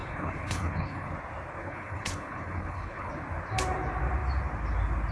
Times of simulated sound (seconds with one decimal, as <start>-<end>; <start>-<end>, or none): 0.0-1.1; 1.6-3.1